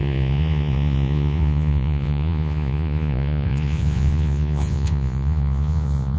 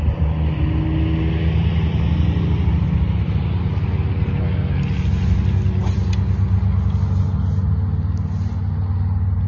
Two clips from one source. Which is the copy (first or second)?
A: first